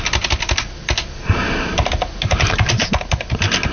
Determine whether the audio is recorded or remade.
recorded